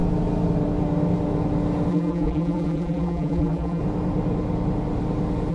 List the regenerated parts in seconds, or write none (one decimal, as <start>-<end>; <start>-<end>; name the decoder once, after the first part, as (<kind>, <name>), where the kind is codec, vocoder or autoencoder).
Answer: 1.9-3.8 (vocoder, BigVGAN v2)